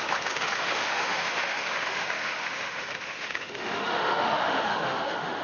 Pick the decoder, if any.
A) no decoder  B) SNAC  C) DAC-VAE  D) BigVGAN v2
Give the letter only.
C